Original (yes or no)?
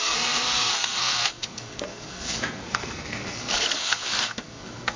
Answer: no